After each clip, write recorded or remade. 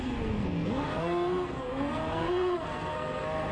remade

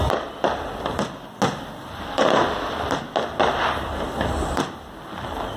recorded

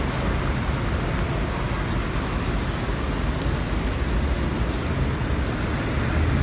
recorded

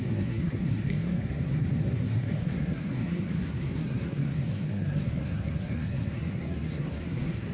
remade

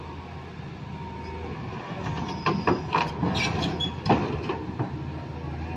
recorded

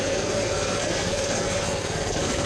remade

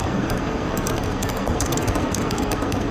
remade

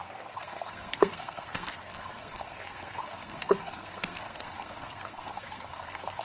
remade